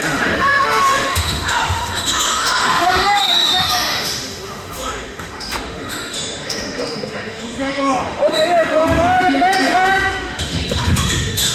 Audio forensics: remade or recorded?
remade